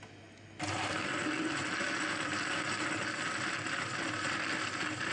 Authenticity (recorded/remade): recorded